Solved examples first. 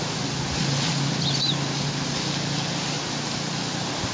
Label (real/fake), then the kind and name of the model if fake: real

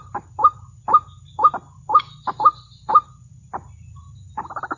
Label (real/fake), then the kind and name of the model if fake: real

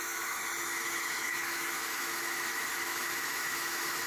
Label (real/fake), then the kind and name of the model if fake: fake, autoencoder, DAC-VAE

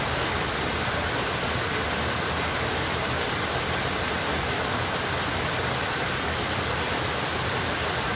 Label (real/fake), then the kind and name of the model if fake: real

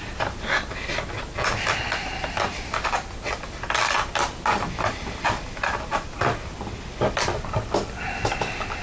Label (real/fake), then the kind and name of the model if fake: real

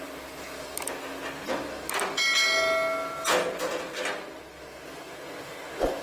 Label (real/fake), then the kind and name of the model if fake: real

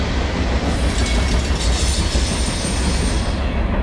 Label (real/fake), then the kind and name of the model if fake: real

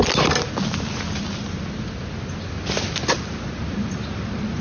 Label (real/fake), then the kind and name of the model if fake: real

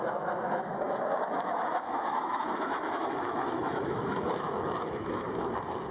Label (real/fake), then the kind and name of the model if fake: fake, autoencoder, DAC-VAE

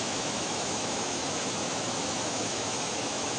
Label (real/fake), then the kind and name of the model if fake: fake, autoencoder, DAC-VAE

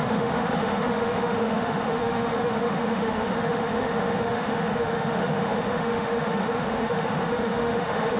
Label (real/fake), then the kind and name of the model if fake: fake, autoencoder, DAC-VAE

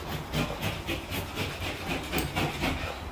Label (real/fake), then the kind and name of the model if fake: real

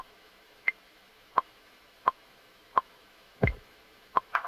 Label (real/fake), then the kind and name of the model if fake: fake, autoencoder, DAC-VAE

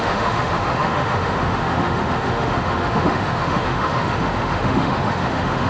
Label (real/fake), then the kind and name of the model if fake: fake, autoencoder, DAC-VAE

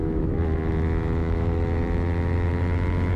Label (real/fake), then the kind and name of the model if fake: fake, autoencoder, DAC-VAE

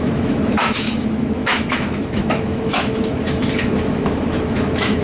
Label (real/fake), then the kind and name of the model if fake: fake, autoencoder, DAC-VAE